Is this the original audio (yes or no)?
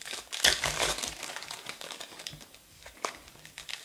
no